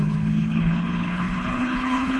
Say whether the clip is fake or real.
fake